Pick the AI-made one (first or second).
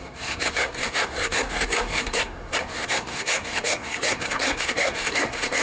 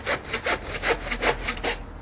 first